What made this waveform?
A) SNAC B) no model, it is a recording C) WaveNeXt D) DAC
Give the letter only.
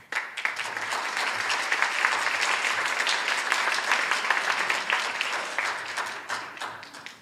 B